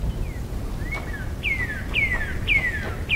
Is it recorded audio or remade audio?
recorded